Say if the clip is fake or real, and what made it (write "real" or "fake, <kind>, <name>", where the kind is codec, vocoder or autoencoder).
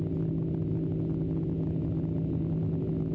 real